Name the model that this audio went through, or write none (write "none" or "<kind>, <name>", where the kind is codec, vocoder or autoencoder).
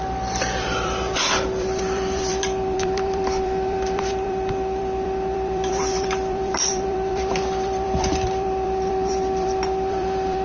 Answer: vocoder, BigVGAN v2